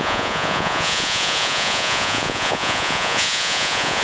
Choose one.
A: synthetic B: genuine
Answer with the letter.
A